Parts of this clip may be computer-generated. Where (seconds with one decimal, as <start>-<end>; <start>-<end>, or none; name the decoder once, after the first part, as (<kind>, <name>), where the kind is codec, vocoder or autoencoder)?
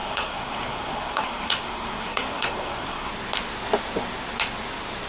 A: 0.0-3.1 (codec, SNAC)